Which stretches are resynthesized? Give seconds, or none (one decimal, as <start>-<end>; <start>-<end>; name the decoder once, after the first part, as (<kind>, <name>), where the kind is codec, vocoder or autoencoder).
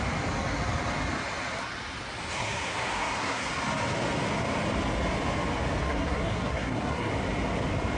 2.3-3.5 (codec, SNAC); 5.8-7.1